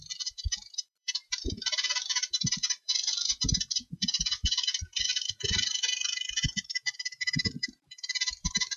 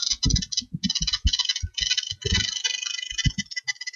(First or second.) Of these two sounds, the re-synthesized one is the first